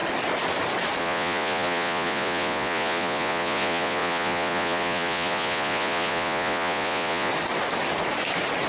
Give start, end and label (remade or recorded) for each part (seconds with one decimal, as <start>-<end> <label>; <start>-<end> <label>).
0.0-1.0 recorded; 1.0-7.3 remade; 7.3-8.7 recorded

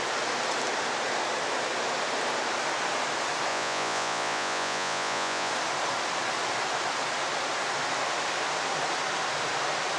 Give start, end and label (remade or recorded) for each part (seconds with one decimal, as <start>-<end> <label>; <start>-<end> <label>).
0.0-3.5 recorded; 3.5-5.5 remade; 5.5-10.0 recorded

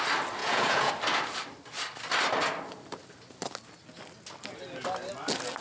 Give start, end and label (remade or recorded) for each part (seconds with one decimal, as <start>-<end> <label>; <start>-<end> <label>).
0.0-0.4 recorded; 0.4-0.9 remade; 0.9-5.6 recorded

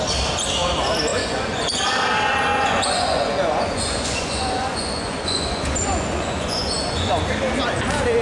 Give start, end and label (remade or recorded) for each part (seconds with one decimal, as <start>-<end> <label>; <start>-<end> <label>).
0.0-1.1 recorded; 1.1-1.8 remade; 1.8-2.5 recorded; 2.5-7.1 remade; 7.1-8.2 recorded

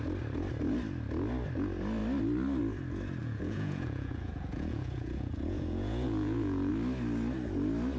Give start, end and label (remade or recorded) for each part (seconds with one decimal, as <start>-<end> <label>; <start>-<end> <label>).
0.0-3.2 recorded; 3.2-6.7 remade; 6.7-8.0 recorded